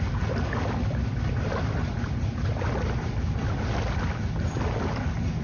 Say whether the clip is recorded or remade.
recorded